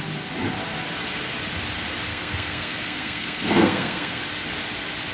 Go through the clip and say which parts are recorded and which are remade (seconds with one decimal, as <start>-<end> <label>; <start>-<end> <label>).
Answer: 0.0-2.1 recorded; 2.1-4.2 remade; 4.2-5.1 recorded